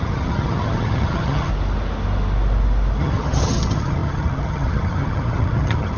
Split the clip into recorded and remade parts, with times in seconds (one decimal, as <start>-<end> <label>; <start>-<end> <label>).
0.0-1.5 remade; 1.5-3.0 recorded; 3.0-6.0 remade